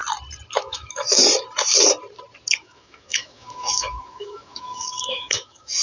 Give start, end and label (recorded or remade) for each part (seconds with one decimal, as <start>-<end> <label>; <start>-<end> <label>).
0.0-0.6 recorded; 0.6-1.2 remade; 1.2-2.6 recorded; 2.6-5.8 remade